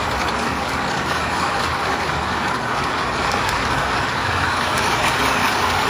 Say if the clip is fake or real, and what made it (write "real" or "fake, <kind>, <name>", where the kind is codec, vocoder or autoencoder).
fake, codec, DAC